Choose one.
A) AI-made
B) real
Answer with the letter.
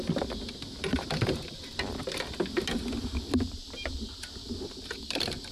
B